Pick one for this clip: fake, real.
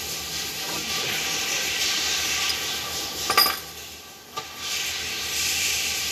fake